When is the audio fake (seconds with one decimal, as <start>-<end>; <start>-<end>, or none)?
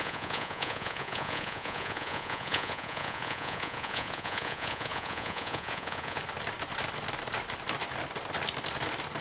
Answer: 0.0-6.2